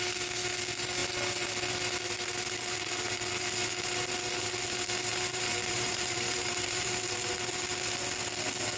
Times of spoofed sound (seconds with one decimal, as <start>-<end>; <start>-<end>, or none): 5.1-7.3